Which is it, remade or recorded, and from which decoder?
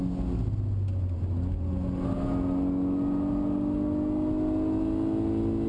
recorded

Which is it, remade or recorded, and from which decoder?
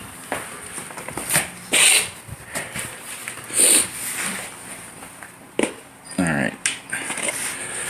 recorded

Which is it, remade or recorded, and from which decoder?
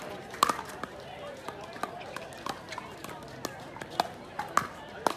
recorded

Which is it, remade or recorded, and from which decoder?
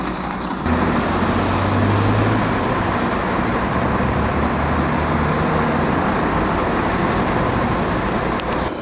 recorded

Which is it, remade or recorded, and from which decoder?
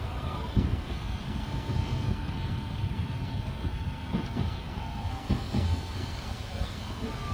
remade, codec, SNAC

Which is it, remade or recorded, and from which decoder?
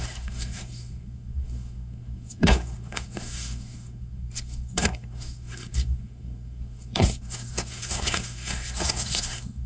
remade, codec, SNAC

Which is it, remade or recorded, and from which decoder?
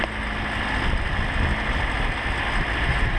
recorded